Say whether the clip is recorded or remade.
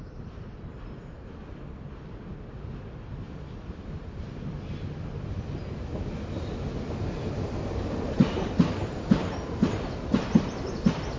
recorded